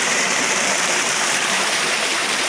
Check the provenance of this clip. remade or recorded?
remade